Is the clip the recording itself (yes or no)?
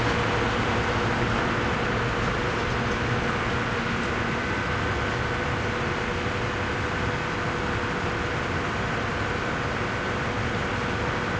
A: yes